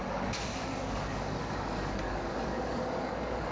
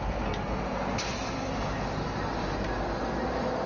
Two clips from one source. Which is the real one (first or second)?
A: second